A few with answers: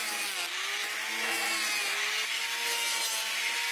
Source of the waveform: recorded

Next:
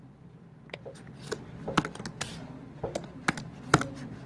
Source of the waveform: recorded